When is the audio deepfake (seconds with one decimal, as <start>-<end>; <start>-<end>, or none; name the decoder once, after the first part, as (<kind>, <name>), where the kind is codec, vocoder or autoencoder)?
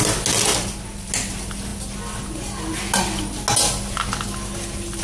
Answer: none